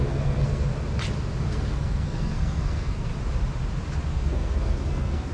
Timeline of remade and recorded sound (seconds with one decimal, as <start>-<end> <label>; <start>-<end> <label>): 0.0-0.7 remade; 0.7-1.4 recorded; 1.4-3.1 remade; 3.1-4.1 recorded; 4.1-5.3 remade